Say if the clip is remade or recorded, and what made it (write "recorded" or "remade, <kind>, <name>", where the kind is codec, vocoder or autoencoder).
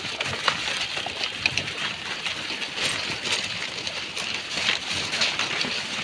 recorded